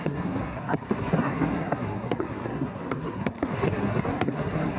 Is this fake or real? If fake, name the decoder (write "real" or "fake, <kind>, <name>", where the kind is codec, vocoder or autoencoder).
fake, codec, SNAC